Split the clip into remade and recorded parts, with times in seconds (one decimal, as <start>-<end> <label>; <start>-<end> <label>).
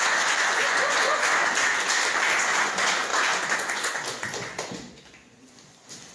0.0-1.4 remade; 1.4-2.4 recorded; 2.4-6.1 remade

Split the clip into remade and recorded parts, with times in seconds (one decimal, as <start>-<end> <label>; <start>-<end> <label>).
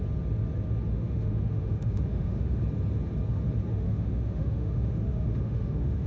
0.0-0.9 recorded; 0.9-2.6 remade; 2.6-3.7 recorded; 3.7-6.1 remade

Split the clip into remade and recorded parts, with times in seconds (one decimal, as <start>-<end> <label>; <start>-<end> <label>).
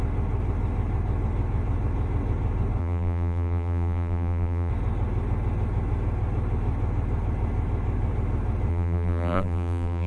0.0-2.8 recorded; 2.8-4.7 remade; 4.7-8.7 recorded; 8.7-10.1 remade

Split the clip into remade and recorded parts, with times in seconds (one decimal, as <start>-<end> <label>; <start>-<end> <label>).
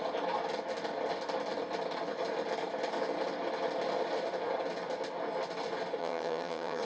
0.0-6.0 recorded; 6.0-6.8 remade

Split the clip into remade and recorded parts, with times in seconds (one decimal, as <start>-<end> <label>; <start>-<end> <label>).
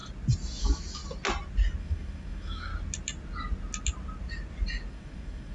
0.0-0.6 recorded; 0.6-1.0 remade; 1.0-1.8 recorded; 1.8-2.7 remade; 2.7-4.9 recorded; 4.9-5.5 remade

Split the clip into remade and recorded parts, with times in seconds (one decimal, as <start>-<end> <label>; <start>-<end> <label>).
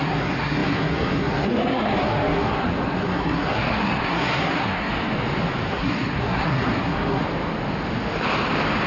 0.0-4.9 remade; 4.9-5.7 recorded; 5.7-7.2 remade; 7.2-8.9 recorded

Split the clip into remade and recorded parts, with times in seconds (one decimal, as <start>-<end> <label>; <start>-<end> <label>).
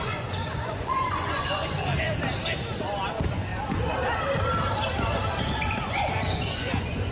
0.0-1.9 remade; 1.9-3.1 recorded; 3.1-3.5 remade; 3.5-5.4 recorded; 5.4-7.1 remade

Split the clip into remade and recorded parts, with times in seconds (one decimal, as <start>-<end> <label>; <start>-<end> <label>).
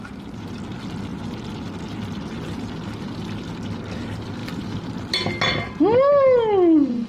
0.0-7.1 recorded